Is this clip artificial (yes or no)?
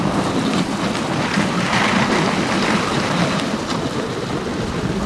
no